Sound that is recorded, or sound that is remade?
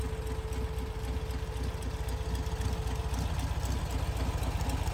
recorded